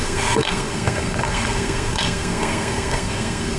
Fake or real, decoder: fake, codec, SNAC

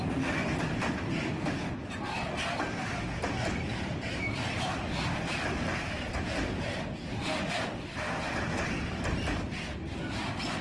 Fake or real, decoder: fake, vocoder, BigVGAN v2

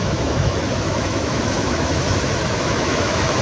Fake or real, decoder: fake, autoencoder, DAC-VAE